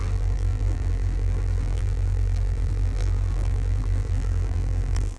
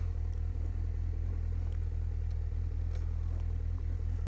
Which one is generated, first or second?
first